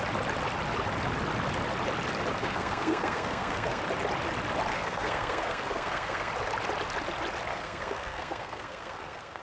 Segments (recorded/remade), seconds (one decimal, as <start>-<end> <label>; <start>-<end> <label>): 0.0-2.4 recorded; 2.4-3.8 remade; 3.8-4.7 recorded; 4.7-6.3 remade; 6.3-7.5 recorded; 7.5-9.4 remade